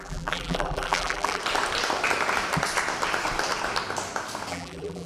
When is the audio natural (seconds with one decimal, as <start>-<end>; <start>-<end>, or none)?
1.4-4.5